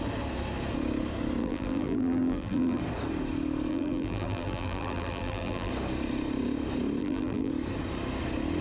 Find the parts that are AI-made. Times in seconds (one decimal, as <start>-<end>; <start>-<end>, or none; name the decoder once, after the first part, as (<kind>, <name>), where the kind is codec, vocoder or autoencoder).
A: 1.4-2.8 (vocoder, BigVGAN v2); 3.7-5.7; 7.0-7.5